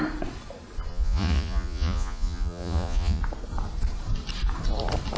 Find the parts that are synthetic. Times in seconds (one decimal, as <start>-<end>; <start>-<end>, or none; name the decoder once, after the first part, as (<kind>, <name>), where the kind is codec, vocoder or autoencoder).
0.9-3.2 (vocoder, Vocos)